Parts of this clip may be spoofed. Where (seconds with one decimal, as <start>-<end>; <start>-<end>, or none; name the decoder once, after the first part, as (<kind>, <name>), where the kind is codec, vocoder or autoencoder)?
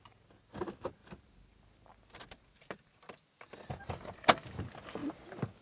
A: none